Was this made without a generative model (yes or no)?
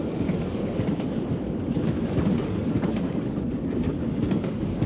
no